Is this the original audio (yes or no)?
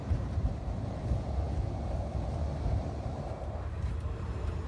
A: no